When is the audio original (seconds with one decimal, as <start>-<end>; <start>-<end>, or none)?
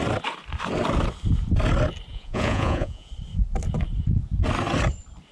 0.0-2.1; 3.1-5.3